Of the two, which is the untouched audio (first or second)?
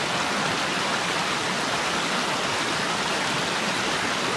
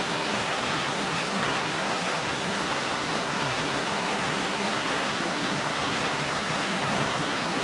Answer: first